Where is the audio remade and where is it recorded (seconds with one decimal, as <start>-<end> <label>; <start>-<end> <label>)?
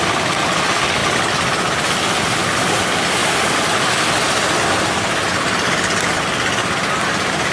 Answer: 0.0-7.5 recorded